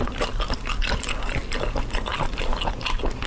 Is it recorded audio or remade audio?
recorded